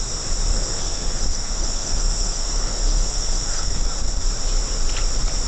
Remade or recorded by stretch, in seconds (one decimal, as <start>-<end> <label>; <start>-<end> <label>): 0.0-0.5 recorded; 0.5-3.8 remade; 3.8-5.5 recorded